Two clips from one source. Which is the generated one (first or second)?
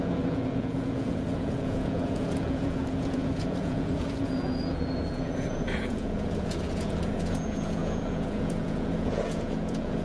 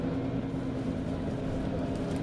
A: first